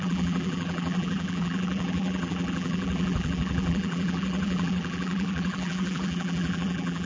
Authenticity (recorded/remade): remade